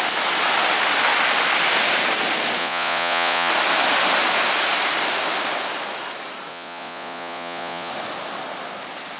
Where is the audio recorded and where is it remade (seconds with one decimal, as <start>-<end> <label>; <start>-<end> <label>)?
0.0-2.6 recorded; 2.6-3.5 remade; 3.5-6.5 recorded; 6.5-7.9 remade; 7.9-9.2 recorded